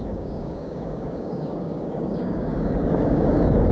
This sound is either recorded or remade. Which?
remade